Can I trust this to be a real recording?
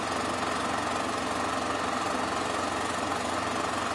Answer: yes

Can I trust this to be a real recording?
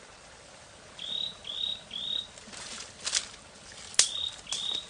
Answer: yes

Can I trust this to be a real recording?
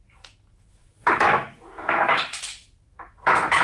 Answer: no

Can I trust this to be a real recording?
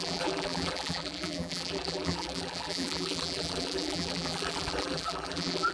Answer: no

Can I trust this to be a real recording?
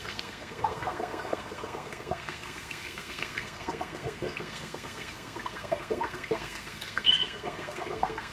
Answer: no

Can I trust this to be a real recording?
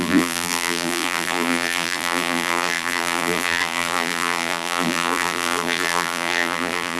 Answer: no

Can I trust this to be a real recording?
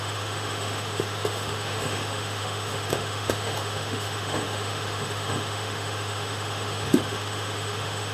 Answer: no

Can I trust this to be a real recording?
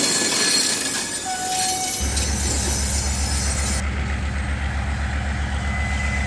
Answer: yes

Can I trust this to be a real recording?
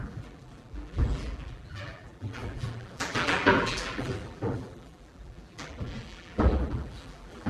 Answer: no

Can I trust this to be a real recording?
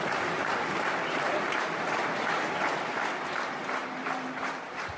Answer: no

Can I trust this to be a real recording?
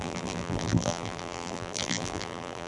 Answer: no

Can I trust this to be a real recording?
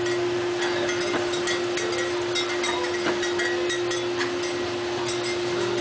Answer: yes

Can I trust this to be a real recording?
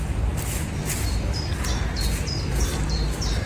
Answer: yes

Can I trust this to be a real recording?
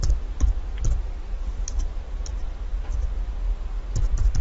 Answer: yes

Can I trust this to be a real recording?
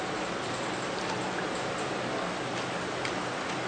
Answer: yes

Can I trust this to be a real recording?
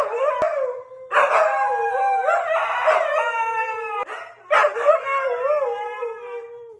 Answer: yes